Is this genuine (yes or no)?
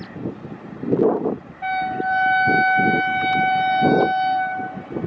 yes